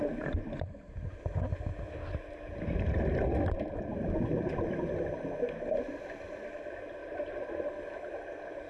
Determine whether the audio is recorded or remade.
recorded